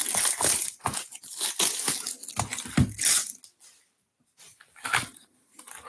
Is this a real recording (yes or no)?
yes